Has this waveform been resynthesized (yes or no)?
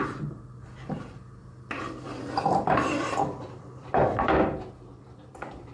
yes